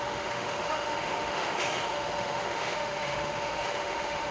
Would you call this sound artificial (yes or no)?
yes